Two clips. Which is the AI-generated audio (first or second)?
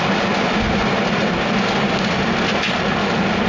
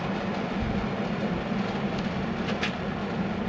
second